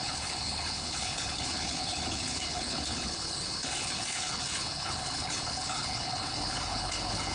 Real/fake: fake